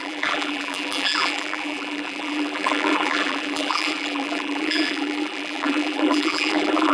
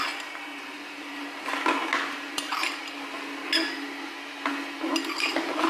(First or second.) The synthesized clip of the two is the first